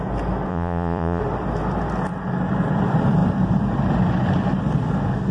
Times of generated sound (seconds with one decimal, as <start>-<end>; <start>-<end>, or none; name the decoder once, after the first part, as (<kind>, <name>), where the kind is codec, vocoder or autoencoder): 0.5-1.2 (vocoder, Vocos)